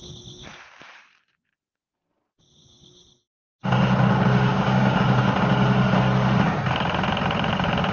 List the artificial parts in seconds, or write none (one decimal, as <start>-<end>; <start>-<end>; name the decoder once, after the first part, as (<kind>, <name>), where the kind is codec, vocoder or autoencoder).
4.5-5.2 (codec, DAC)